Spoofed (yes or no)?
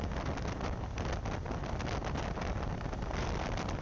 no